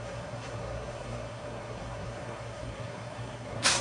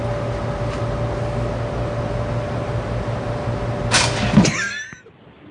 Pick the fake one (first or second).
first